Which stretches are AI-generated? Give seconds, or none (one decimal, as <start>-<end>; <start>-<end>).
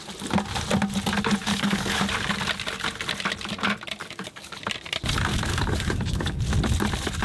1.4-2.0; 4.0-4.6; 5.3-6.4